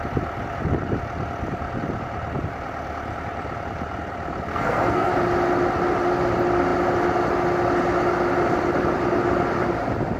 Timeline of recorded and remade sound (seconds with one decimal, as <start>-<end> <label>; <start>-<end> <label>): 0.0-4.5 recorded; 4.5-5.1 remade; 5.1-10.2 recorded